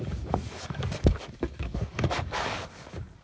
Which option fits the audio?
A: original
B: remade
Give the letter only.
B